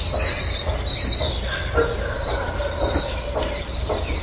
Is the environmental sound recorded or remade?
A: recorded